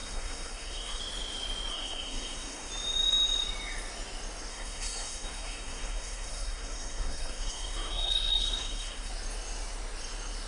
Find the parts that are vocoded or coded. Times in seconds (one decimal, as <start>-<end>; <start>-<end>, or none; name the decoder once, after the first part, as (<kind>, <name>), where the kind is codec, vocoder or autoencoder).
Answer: 0.0-1.0 (codec, SNAC); 1.7-2.7; 4.5-9.1